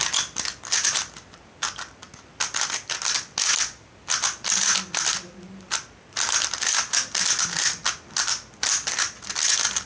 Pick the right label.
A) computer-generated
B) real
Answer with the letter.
B